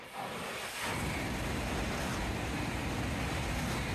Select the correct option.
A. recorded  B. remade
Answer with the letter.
A